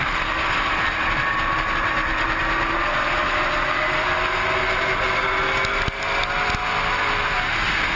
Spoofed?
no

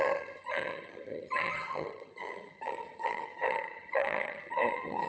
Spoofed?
yes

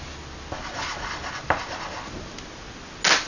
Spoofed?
no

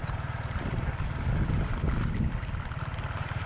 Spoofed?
no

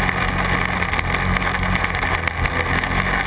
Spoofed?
no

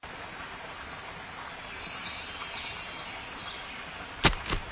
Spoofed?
no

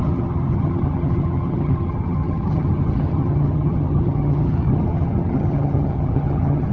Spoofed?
yes